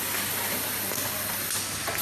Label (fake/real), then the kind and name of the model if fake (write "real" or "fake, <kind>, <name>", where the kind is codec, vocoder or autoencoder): real